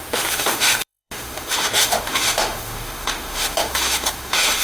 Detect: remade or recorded remade